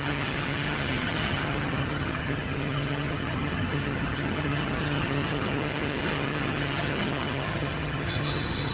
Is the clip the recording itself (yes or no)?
no